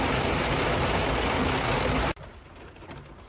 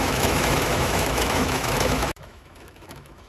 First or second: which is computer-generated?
second